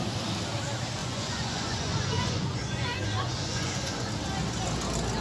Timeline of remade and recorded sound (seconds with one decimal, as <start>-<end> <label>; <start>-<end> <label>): 0.0-1.0 recorded; 1.0-4.1 remade; 4.1-5.2 recorded